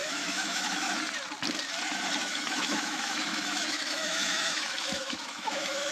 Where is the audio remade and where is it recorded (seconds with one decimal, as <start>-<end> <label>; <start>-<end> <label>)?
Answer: 0.0-1.0 remade; 1.0-2.2 recorded; 2.2-5.9 remade